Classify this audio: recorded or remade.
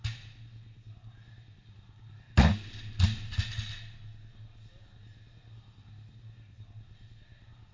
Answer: recorded